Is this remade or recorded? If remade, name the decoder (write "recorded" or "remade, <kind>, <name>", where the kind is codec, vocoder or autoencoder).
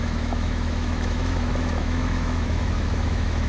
remade, autoencoder, DAC-VAE